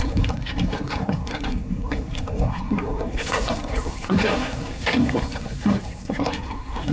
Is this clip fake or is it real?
fake